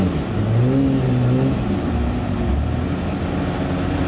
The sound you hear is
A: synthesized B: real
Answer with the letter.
B